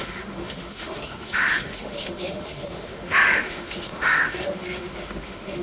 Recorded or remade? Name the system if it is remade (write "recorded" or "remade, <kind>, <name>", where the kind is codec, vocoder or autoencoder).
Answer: remade, autoencoder, DAC-VAE